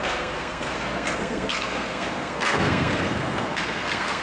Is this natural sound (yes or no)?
no